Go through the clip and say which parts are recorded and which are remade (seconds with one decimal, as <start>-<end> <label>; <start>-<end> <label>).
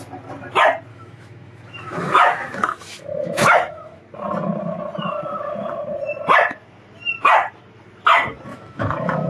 0.0-0.9 recorded; 0.9-4.0 remade; 4.0-8.5 recorded; 8.5-9.3 remade